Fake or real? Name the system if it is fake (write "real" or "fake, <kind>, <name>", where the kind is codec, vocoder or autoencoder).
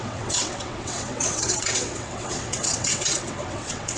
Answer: fake, vocoder, WaveNeXt